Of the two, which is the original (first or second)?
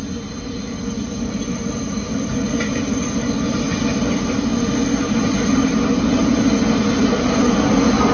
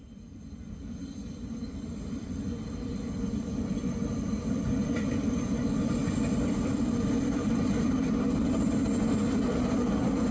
first